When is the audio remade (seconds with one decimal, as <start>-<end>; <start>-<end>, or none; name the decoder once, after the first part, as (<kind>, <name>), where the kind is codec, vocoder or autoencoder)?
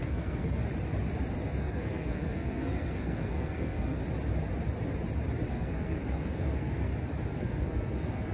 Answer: 0.0-0.6 (codec, SNAC); 1.6-4.0; 5.5-6.9; 7.4-8.3